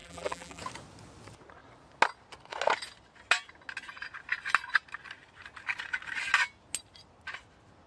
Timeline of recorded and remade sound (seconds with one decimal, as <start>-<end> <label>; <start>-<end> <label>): 0.0-0.6 remade; 0.6-7.9 recorded